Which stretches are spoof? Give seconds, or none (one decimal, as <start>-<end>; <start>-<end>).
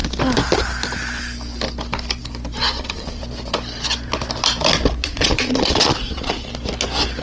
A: 2.7-3.2; 5.0-6.5